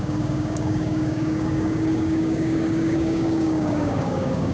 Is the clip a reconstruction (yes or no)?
yes